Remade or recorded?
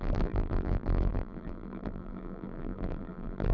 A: remade